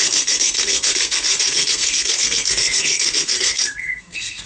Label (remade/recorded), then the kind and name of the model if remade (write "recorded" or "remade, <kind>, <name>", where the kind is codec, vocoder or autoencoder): remade, codec, SNAC